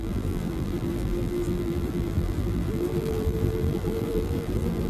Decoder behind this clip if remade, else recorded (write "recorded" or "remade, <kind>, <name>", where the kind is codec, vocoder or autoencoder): remade, vocoder, BigVGAN v2